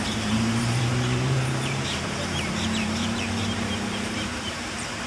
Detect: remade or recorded remade